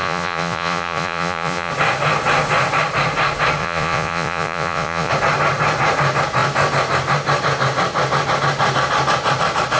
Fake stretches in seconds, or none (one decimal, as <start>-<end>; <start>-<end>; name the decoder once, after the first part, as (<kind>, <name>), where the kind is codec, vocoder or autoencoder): 0.0-1.7 (vocoder, Vocos); 3.6-5.1